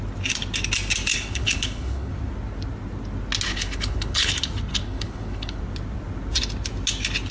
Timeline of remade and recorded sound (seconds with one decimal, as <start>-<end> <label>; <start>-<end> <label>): 0.0-1.1 recorded; 1.1-2.1 remade; 2.1-3.5 recorded; 3.5-4.3 remade; 4.3-4.7 recorded; 4.7-5.6 remade; 5.6-7.3 recorded